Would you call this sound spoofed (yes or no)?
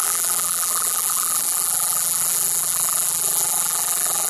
yes